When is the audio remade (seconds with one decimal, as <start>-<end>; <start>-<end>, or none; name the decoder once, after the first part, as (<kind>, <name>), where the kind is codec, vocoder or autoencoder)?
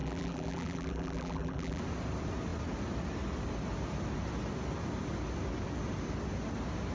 0.0-1.8 (vocoder, BigVGAN v2)